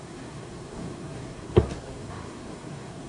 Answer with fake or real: fake